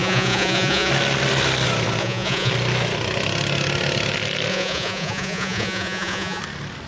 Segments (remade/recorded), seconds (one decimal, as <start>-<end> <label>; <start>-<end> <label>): 0.0-0.9 remade; 0.9-2.0 recorded; 2.0-2.5 remade; 2.5-4.5 recorded; 4.5-6.4 remade; 6.4-6.9 recorded